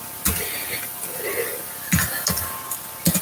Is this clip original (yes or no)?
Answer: yes